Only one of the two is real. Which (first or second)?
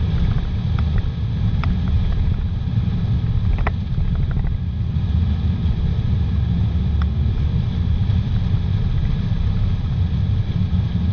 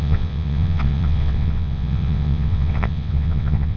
first